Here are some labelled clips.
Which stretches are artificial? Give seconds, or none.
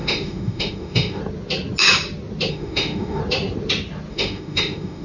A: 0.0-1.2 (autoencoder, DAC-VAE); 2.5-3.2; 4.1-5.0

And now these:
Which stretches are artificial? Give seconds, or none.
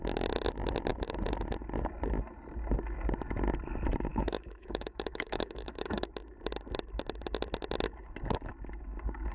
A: 4.1-6.1 (autoencoder, DAC-VAE)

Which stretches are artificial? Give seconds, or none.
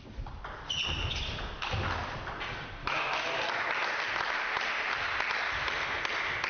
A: 2.8-3.3 (autoencoder, DAC-VAE)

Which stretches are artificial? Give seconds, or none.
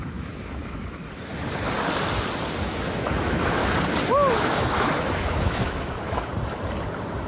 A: 0.0-1.3 (autoencoder, DAC-VAE); 3.1-3.6; 4.3-6.3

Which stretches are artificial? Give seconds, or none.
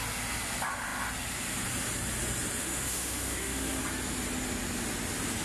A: 2.6-3.8 (autoencoder, DAC-VAE)